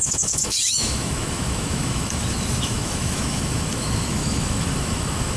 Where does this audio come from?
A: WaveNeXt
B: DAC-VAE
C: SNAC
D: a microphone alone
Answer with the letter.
B